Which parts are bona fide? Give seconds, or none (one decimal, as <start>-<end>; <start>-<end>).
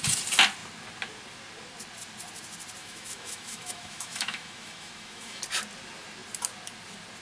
0.0-2.8; 5.4-7.2